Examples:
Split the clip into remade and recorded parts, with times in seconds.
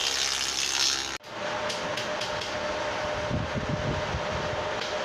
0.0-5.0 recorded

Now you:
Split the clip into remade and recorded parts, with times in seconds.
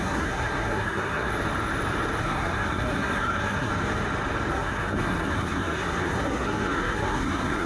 0.0-1.3 remade; 1.3-2.2 recorded; 2.2-3.7 remade; 3.7-4.5 recorded; 4.5-7.7 remade